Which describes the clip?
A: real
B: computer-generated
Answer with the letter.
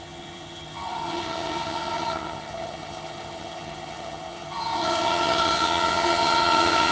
B